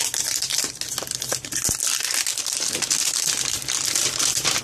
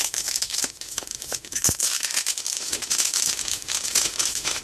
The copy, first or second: second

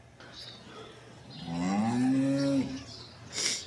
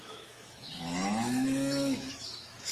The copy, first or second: second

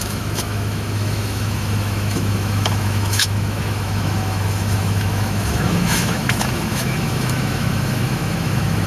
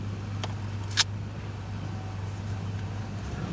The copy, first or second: first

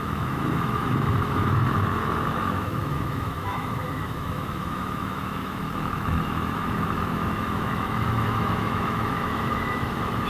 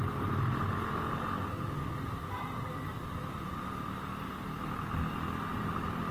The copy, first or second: first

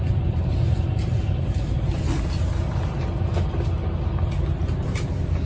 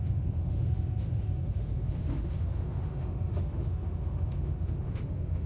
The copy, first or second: second